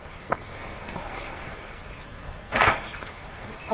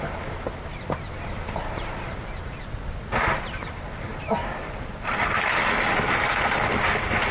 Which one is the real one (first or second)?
second